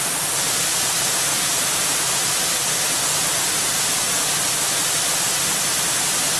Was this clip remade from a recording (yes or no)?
no